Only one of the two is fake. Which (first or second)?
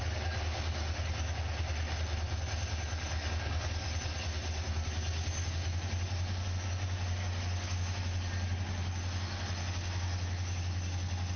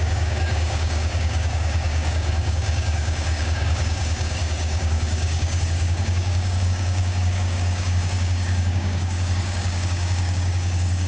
second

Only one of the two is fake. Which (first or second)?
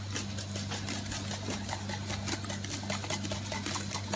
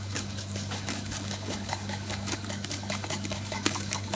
second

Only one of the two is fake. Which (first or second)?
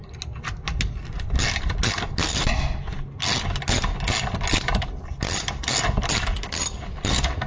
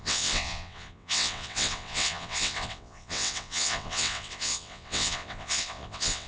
second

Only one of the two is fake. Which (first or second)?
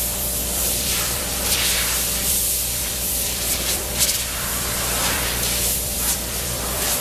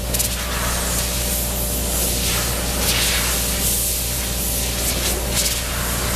first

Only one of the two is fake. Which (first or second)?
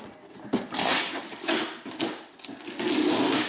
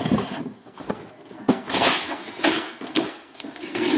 second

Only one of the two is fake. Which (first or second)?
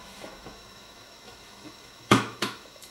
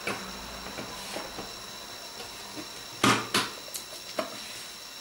first